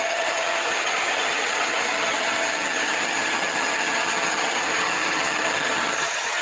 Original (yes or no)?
no